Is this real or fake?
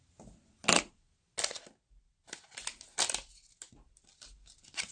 real